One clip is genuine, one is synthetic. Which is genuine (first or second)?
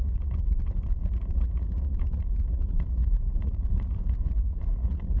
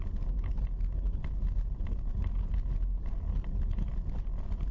second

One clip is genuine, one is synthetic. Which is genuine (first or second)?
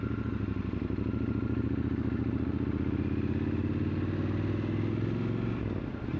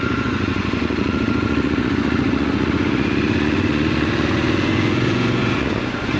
first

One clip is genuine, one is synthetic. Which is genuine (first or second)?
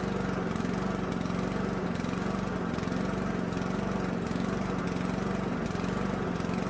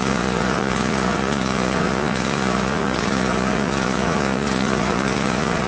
first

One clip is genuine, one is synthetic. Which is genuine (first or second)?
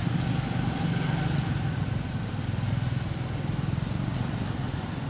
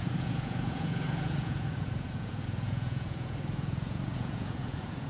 first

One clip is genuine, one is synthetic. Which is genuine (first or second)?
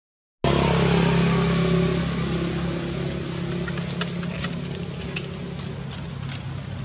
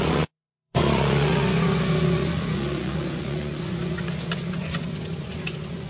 first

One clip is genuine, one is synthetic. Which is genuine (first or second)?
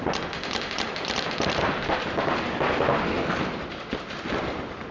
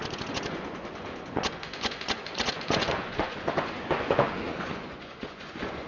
first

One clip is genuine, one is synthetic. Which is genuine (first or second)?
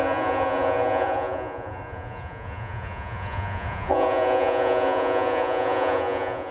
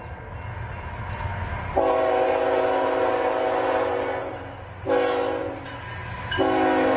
second